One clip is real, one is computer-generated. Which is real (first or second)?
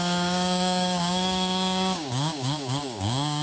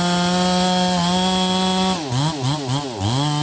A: second